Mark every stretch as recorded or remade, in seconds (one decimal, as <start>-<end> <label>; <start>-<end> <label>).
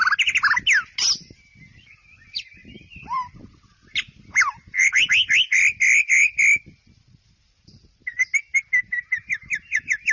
0.0-2.6 recorded; 2.6-5.1 remade; 5.1-5.5 recorded; 5.5-8.2 remade; 8.2-10.1 recorded